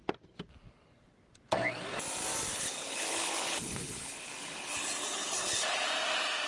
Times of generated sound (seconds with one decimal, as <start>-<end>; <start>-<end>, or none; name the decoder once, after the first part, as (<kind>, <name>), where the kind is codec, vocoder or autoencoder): 2.5-5.9 (codec, HILCodec)